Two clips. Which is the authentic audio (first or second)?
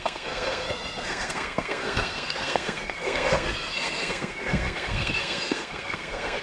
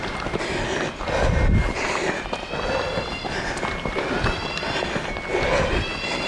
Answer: second